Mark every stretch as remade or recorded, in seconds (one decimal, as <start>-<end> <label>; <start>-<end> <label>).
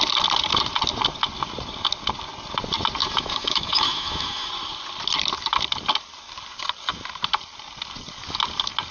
0.0-3.0 recorded; 3.0-4.5 remade; 4.5-8.9 recorded